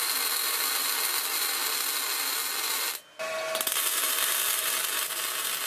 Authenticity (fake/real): real